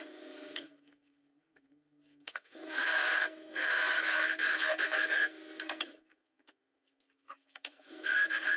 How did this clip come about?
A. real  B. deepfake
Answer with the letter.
B